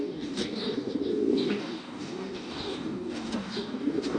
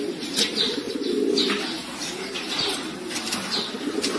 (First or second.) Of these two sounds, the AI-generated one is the first